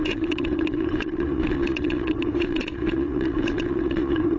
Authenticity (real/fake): fake